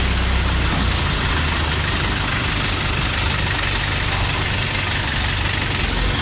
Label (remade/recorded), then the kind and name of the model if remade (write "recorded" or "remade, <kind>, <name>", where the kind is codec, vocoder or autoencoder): recorded